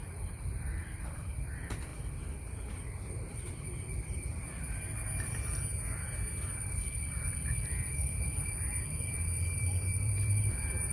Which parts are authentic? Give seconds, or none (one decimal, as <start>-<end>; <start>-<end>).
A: 4.3-6.7